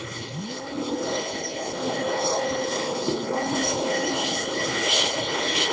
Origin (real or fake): fake